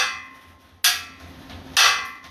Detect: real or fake real